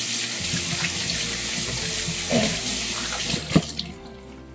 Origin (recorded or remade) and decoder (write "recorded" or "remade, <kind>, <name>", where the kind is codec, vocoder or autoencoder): recorded